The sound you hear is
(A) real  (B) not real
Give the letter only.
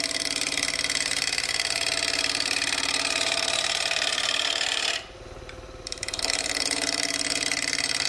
B